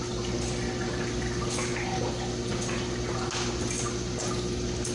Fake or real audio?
real